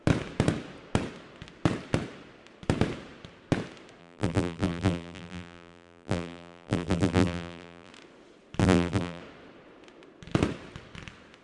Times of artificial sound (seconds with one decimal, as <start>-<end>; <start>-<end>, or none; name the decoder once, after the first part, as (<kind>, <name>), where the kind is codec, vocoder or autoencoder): 4.0-7.9 (vocoder, BigVGAN v2); 8.6-9.2